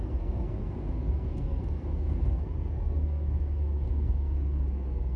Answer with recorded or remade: remade